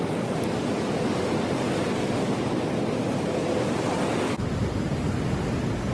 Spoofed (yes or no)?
no